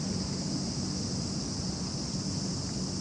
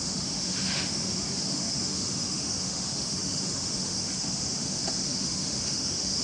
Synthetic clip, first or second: second